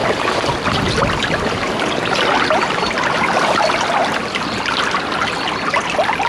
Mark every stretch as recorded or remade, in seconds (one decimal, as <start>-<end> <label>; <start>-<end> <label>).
0.0-6.3 recorded